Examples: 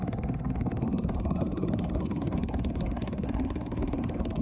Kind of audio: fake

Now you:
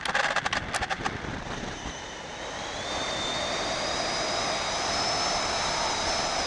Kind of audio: real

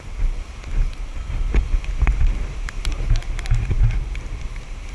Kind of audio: real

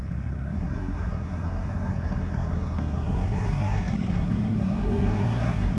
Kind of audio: fake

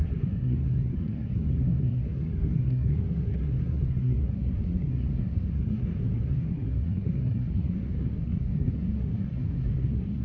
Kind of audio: fake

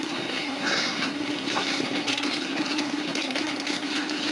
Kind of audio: fake